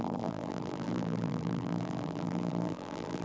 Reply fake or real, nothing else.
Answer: fake